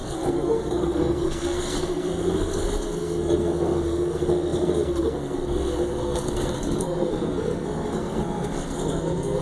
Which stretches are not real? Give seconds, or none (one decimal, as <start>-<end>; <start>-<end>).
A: 0.0-9.4